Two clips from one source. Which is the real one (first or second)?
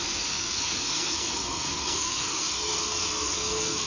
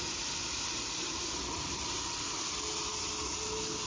second